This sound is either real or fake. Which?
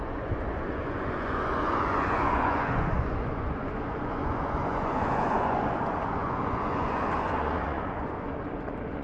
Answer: fake